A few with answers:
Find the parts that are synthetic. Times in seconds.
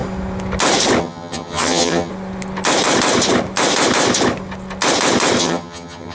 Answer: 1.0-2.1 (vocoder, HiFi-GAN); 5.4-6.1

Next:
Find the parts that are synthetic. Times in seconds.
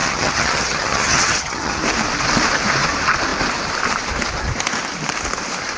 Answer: 0.0-1.8 (vocoder, HiFi-GAN)